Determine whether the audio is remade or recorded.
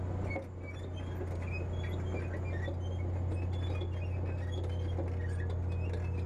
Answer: recorded